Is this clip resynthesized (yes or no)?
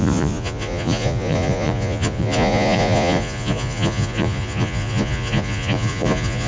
yes